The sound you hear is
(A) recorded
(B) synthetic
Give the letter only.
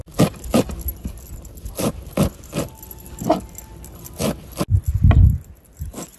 A